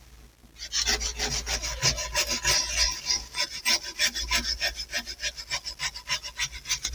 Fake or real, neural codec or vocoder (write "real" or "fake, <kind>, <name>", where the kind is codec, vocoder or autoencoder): real